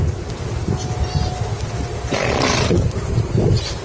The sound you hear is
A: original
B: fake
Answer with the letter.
A